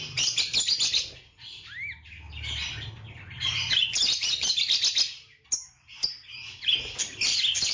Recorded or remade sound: recorded